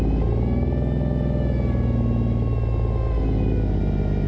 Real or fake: real